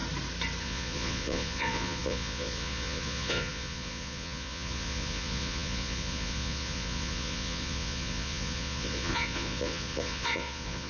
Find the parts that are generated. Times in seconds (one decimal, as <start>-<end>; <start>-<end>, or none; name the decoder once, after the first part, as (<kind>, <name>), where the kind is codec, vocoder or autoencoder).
0.6-10.9 (vocoder, Vocos)